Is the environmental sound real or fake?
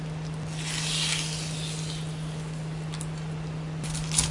real